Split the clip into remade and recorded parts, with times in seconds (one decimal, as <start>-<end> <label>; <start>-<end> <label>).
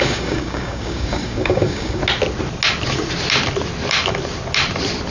0.0-2.0 remade; 2.0-5.1 recorded